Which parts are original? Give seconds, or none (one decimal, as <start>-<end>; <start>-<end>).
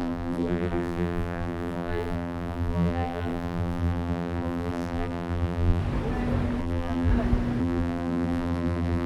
5.8-6.6; 7.1-7.6